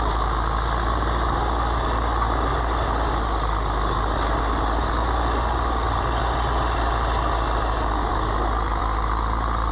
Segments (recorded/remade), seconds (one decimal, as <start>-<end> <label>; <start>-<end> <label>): 0.0-2.5 recorded; 2.5-4.3 remade; 4.3-9.7 recorded